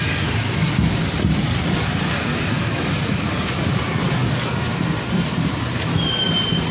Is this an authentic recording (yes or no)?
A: no